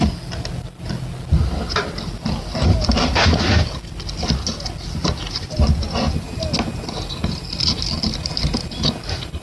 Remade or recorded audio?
recorded